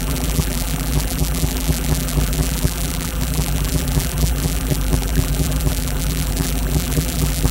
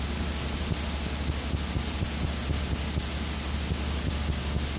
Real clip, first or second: second